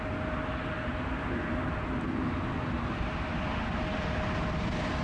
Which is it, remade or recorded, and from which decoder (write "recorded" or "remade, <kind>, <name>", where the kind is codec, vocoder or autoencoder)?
recorded